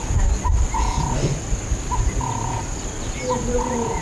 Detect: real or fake real